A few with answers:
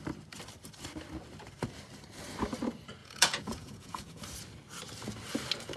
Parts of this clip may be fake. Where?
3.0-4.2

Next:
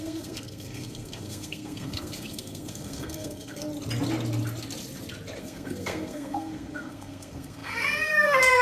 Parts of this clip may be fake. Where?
0.0-3.6; 5.4-8.6

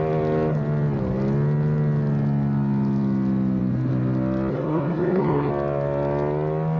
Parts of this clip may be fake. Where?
4.5-5.5

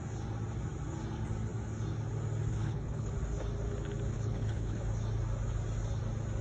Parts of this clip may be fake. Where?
2.5-3.1; 4.1-4.8

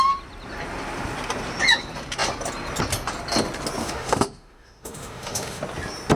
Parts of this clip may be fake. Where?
3.8-5.6

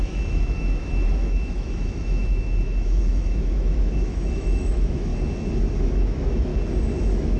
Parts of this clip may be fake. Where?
0.0-5.1; 5.8-6.5; 7.0-7.4